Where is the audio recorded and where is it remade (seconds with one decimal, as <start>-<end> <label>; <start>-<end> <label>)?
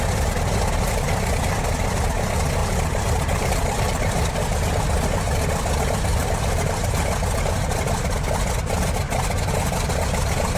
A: 0.0-2.6 recorded; 2.6-4.3 remade; 4.3-6.1 recorded; 6.1-6.9 remade; 6.9-10.6 recorded